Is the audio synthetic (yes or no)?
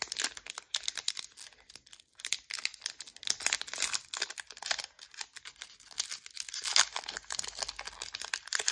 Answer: no